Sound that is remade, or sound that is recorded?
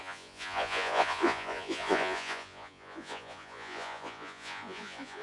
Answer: remade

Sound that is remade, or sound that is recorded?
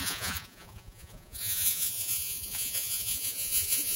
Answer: remade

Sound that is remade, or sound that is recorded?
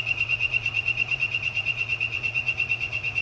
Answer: remade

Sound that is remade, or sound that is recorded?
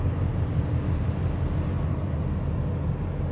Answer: recorded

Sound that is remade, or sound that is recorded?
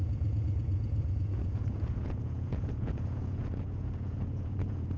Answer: remade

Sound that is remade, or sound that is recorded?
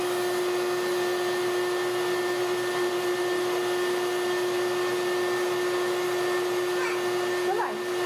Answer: recorded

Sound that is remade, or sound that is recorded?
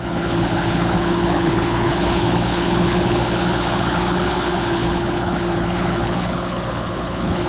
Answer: remade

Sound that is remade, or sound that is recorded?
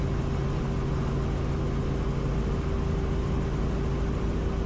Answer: recorded